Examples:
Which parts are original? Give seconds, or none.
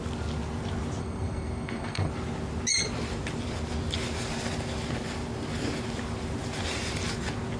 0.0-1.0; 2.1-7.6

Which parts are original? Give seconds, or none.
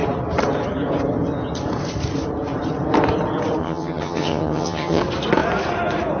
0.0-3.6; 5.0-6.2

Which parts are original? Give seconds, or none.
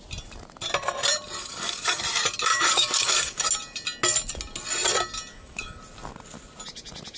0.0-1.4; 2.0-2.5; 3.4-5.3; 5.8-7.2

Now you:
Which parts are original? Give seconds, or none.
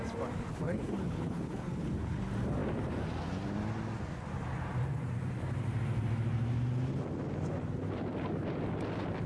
0.0-0.5; 2.2-9.3